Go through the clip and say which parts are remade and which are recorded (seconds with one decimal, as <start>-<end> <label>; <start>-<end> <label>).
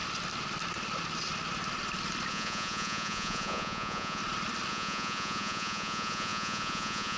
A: 0.0-2.3 recorded; 2.3-4.2 remade; 4.2-4.7 recorded; 4.7-7.2 remade